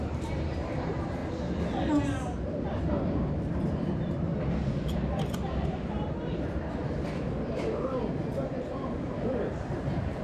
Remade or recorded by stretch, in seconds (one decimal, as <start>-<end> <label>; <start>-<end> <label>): 0.0-1.2 remade; 1.2-2.9 recorded; 2.9-4.3 remade; 4.3-5.2 recorded; 5.2-6.8 remade; 6.8-8.4 recorded; 8.4-10.2 remade

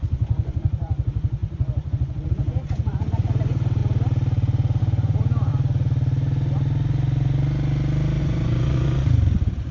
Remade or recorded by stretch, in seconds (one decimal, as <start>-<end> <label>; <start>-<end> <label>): 0.0-3.8 remade; 3.8-4.8 recorded; 4.8-5.5 remade; 5.5-8.2 recorded; 8.2-9.7 remade

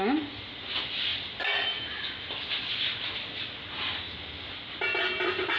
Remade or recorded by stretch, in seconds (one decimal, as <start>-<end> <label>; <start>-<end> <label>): 0.0-5.6 recorded

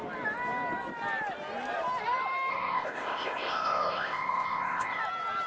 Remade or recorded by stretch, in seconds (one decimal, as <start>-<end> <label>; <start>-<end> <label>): 0.0-2.5 recorded; 2.5-5.0 remade; 5.0-5.5 recorded

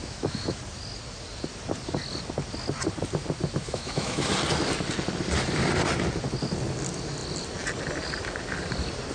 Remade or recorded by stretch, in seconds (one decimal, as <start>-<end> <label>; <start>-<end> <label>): 0.0-0.6 remade; 0.6-3.6 recorded; 3.6-4.3 remade; 4.3-9.1 recorded

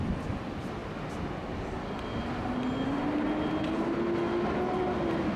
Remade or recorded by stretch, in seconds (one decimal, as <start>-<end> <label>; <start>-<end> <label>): 0.0-5.4 recorded

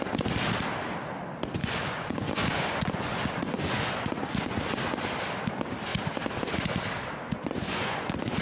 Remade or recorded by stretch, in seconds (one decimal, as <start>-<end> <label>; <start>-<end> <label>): 0.0-1.6 recorded; 1.6-4.6 remade; 4.6-7.3 recorded; 7.3-8.4 remade

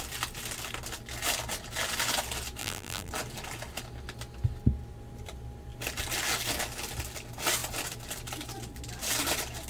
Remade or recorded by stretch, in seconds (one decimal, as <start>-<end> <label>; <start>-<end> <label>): 0.0-2.6 recorded; 2.6-3.1 remade; 3.1-9.7 recorded